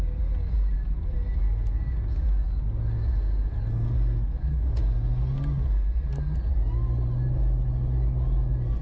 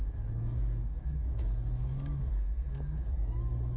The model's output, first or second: second